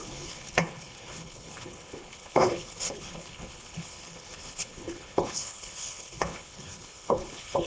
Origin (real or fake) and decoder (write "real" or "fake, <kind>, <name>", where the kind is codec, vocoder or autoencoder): fake, codec, HILCodec